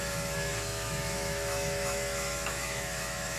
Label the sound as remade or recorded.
remade